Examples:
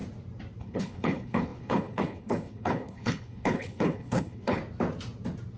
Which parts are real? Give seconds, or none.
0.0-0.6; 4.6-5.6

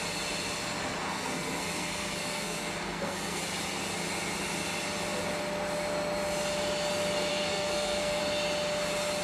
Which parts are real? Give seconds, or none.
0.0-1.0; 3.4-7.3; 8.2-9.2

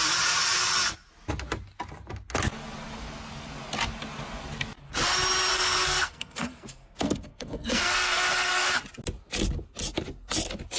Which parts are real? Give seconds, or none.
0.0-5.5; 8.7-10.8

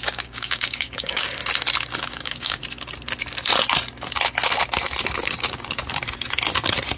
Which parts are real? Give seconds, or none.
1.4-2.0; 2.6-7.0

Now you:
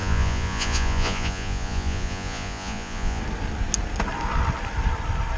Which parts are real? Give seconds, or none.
3.2-5.4